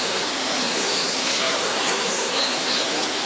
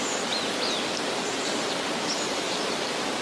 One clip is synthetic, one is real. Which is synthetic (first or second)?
first